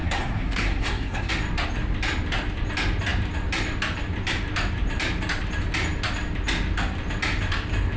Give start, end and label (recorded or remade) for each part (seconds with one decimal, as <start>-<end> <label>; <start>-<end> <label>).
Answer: 0.0-1.3 remade; 1.3-8.0 recorded